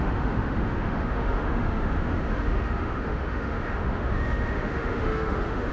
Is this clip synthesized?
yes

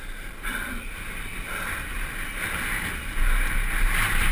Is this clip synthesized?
no